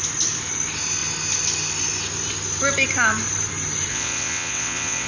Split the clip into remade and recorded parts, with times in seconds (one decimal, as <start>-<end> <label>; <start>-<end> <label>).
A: 0.0-3.9 recorded; 3.9-5.1 remade